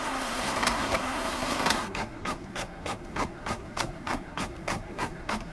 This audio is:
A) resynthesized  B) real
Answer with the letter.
A